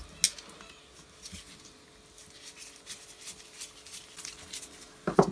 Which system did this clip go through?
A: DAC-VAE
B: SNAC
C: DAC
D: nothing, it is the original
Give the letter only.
D